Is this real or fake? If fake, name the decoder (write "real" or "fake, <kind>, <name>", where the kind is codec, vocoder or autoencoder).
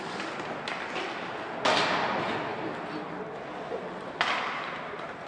real